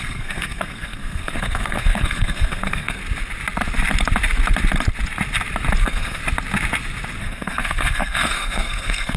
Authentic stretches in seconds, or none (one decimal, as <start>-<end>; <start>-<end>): 3.0-5.8; 6.2-7.2